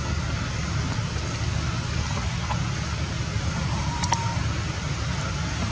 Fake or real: real